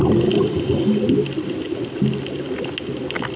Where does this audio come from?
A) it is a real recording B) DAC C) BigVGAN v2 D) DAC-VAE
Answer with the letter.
A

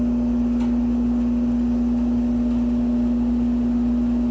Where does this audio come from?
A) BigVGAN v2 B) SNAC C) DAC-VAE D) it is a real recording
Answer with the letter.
D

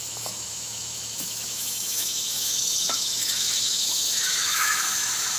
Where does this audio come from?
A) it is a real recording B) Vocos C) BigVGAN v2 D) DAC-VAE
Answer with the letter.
D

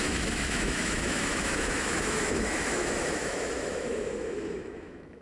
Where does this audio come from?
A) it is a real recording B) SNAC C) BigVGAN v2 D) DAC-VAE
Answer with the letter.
D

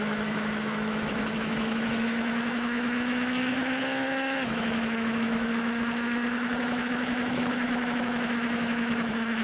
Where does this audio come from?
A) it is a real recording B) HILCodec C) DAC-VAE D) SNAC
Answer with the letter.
C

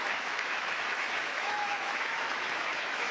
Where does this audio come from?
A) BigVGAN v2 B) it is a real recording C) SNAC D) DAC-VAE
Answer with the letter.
D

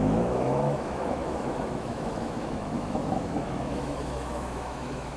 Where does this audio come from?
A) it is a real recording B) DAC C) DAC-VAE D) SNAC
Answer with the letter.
C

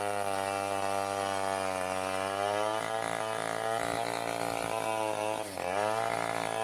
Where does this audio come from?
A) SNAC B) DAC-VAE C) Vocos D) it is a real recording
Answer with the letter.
D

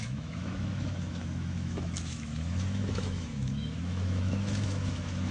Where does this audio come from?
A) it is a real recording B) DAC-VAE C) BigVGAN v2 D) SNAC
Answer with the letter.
B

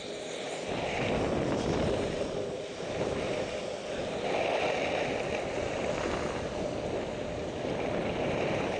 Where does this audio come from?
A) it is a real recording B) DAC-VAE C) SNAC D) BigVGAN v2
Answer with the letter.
A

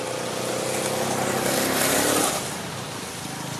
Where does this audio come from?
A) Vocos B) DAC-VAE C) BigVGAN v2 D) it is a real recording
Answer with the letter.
D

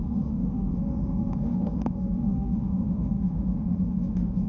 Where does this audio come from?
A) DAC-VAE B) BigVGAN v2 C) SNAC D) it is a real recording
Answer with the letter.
A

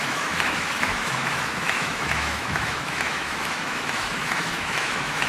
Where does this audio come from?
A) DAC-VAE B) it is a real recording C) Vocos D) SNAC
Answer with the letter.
A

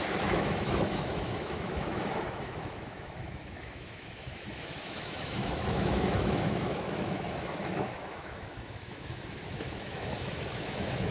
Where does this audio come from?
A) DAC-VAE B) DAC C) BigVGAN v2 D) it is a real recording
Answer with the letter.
A